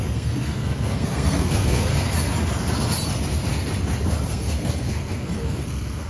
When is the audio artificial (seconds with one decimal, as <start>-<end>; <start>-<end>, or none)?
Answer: 0.0-1.9; 4.3-6.1